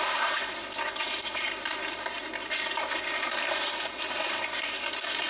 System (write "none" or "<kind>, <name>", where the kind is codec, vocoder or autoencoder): none